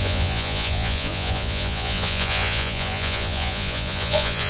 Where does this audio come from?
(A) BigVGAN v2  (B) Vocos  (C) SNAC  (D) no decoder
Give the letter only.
B